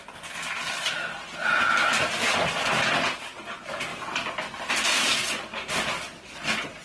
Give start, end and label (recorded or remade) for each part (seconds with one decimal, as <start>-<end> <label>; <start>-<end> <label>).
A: 0.0-6.8 recorded